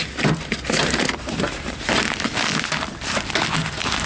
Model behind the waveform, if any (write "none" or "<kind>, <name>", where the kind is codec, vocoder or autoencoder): none